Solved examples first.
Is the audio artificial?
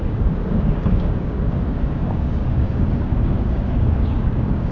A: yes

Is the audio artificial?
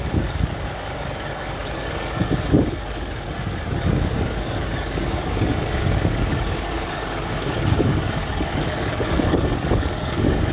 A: yes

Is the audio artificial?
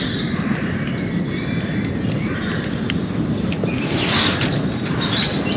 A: no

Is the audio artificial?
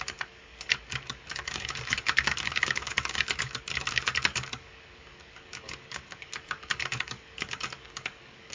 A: yes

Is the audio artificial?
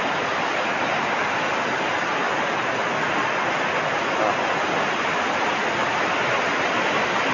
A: no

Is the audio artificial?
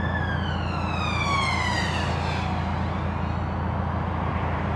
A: no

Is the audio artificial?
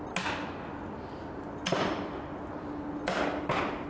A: no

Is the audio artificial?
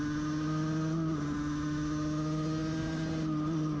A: no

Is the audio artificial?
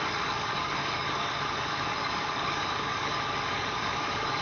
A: yes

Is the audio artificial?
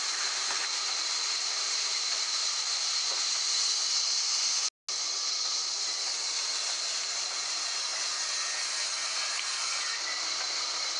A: no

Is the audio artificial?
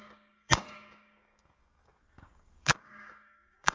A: yes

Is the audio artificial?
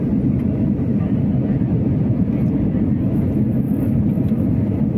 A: no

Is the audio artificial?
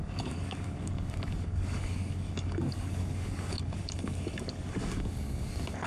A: yes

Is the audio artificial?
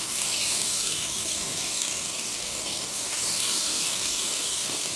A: yes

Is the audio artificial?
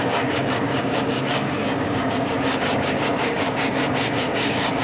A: yes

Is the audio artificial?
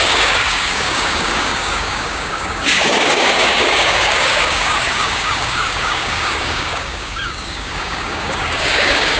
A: yes